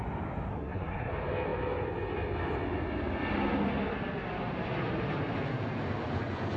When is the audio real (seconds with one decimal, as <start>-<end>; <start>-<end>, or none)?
0.0-0.5; 1.1-6.6